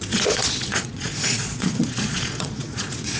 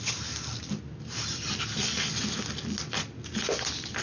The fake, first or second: first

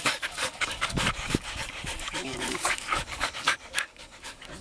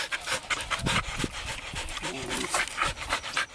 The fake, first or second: first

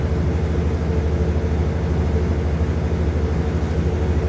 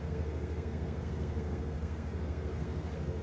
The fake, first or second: second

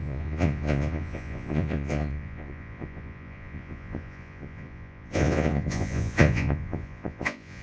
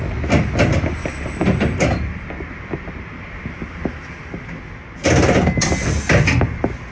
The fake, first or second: first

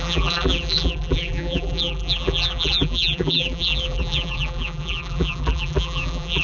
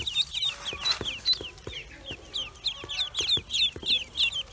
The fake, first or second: first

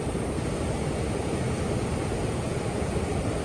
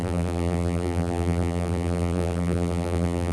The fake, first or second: second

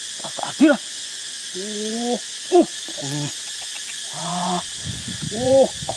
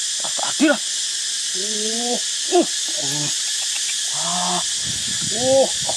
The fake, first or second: first